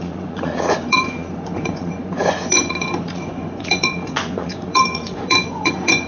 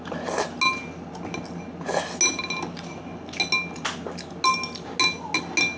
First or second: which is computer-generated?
first